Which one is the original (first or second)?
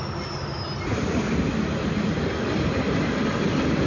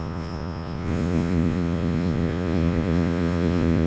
first